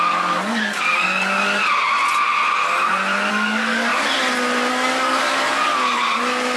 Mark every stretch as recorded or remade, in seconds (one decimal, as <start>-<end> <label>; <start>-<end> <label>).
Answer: 0.0-1.6 remade; 1.6-3.3 recorded; 3.3-3.9 remade; 3.9-4.7 recorded; 4.7-5.7 remade; 5.7-6.6 recorded